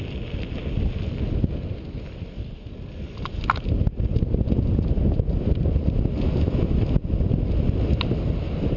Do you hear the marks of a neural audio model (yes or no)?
no